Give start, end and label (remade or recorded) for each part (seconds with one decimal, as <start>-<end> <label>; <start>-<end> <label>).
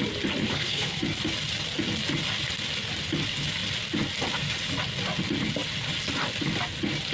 0.0-0.4 recorded; 0.4-1.0 remade; 1.0-7.1 recorded